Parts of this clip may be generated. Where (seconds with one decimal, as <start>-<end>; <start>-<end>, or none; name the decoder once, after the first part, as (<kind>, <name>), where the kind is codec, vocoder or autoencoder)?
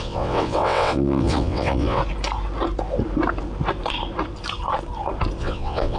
0.0-2.0 (vocoder, WaveNeXt); 5.4-6.0